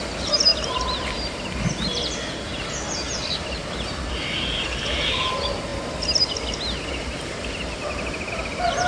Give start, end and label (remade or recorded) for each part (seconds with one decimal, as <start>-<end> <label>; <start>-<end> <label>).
0.0-8.9 recorded

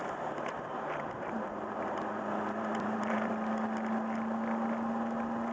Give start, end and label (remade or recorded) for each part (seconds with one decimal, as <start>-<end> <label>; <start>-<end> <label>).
0.0-3.3 remade; 3.3-5.5 recorded

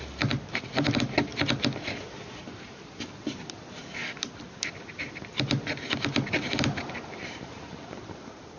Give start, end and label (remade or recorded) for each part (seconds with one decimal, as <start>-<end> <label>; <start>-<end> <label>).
0.0-1.3 remade; 1.3-6.4 recorded; 6.4-8.6 remade

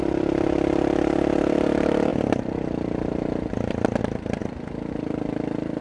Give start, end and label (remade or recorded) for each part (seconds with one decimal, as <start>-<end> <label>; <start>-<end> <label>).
0.0-4.4 remade; 4.4-4.9 recorded; 4.9-5.8 remade

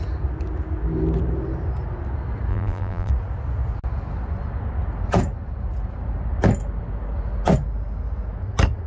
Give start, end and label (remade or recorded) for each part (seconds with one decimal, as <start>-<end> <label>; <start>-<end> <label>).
0.0-2.5 recorded; 2.5-3.1 remade; 3.1-8.9 recorded